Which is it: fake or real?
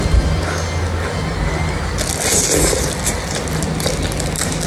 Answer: real